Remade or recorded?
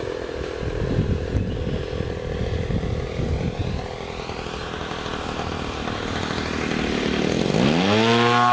recorded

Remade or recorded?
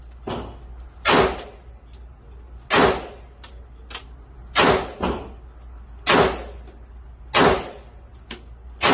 recorded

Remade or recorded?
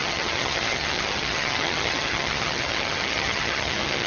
remade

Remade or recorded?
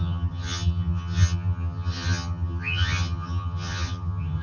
remade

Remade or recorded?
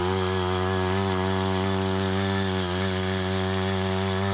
recorded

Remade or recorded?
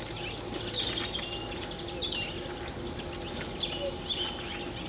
recorded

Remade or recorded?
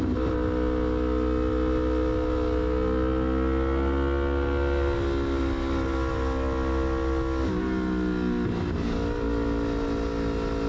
recorded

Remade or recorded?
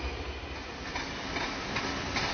recorded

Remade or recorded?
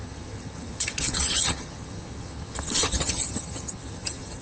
remade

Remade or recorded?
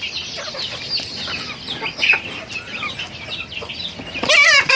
recorded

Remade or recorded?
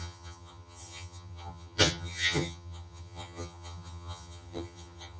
remade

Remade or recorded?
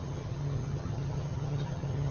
remade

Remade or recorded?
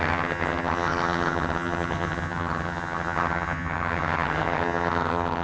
remade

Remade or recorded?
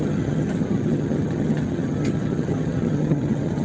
remade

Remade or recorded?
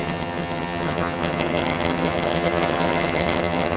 remade